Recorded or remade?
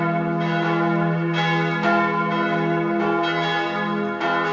recorded